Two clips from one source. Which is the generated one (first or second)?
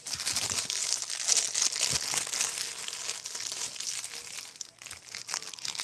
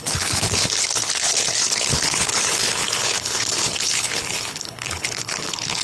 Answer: second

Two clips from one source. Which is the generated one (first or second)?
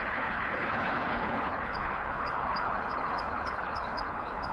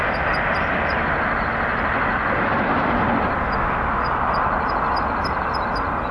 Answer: first